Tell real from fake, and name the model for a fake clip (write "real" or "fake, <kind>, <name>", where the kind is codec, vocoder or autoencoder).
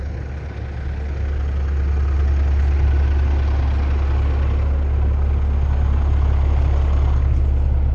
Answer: real